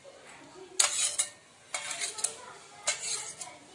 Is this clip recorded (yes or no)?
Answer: yes